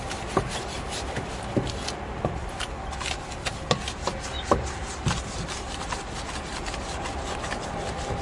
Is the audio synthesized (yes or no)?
no